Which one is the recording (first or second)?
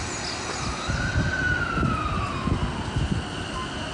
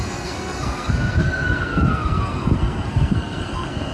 first